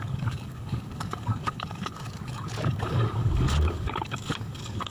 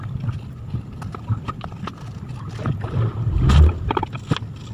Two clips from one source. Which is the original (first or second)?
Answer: second